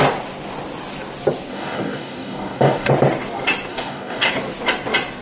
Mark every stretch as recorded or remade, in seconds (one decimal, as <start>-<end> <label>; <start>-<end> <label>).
0.0-1.5 recorded; 1.5-2.9 remade; 2.9-3.7 recorded; 3.7-4.3 remade; 4.3-5.2 recorded